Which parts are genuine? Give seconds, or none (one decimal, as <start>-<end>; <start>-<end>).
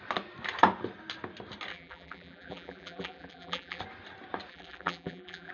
0.0-1.7; 3.8-4.5